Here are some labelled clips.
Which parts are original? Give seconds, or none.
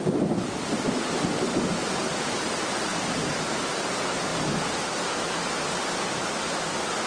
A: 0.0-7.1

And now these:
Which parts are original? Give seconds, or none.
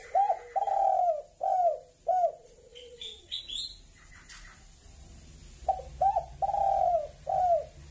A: 0.0-2.7; 3.4-7.9